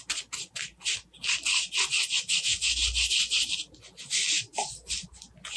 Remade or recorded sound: recorded